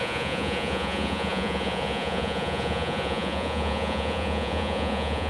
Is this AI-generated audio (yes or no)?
yes